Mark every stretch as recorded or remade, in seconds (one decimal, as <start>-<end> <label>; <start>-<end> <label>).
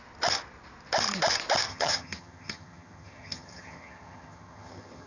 0.0-1.7 recorded; 1.7-5.1 remade